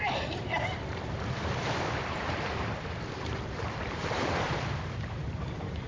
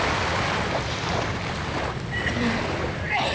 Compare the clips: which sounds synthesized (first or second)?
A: first